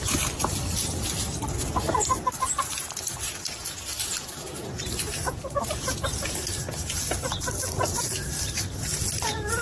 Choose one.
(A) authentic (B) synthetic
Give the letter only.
B